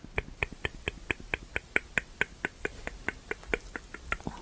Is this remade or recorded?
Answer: recorded